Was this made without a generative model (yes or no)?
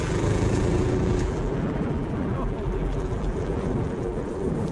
no